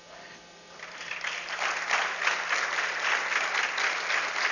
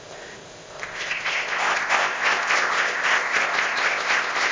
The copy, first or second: second